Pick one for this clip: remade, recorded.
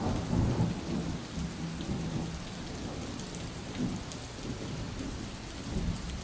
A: recorded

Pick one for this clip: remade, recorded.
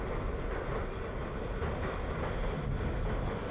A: recorded